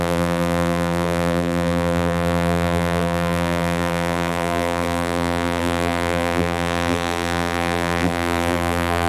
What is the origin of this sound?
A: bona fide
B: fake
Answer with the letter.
B